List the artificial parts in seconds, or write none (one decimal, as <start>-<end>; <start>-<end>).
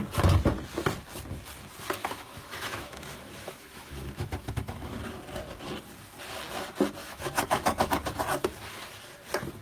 2.0-4.9; 7.0-7.9